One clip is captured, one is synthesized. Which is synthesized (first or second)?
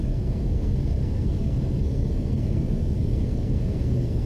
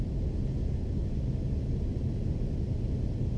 first